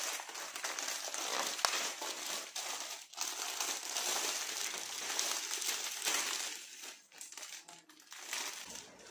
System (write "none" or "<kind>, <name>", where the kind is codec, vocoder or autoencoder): none